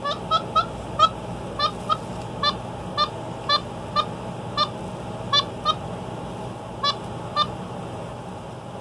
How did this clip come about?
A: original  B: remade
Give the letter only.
A